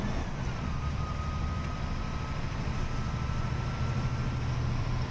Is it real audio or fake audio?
fake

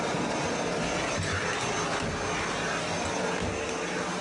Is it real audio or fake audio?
real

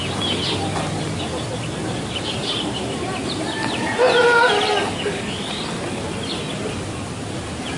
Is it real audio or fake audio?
real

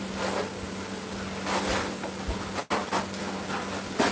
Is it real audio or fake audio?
real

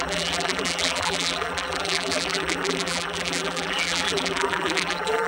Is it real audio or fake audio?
fake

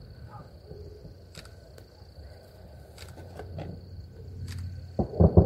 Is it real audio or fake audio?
real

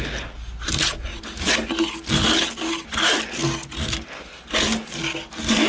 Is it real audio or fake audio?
real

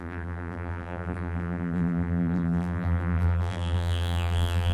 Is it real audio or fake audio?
fake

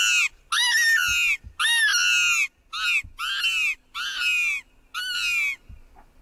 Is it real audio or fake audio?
real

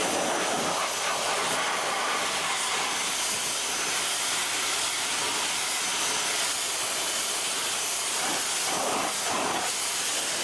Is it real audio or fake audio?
real